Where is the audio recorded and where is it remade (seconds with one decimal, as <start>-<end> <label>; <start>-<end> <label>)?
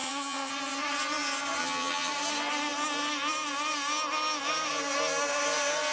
0.0-0.5 remade; 0.5-1.6 recorded; 1.6-2.1 remade; 2.1-5.9 recorded